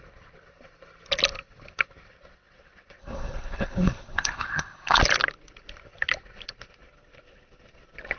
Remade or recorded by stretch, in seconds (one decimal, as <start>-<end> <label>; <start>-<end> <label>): 0.0-3.0 recorded; 3.0-5.0 remade; 5.0-8.2 recorded